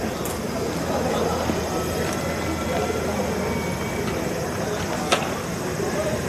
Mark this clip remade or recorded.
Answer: recorded